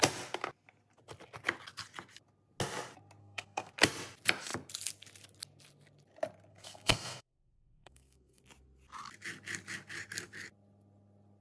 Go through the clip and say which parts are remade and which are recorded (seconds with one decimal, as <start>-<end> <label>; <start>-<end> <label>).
0.0-3.2 recorded; 3.2-3.7 remade; 3.7-6.5 recorded; 6.5-8.4 remade; 8.4-11.4 recorded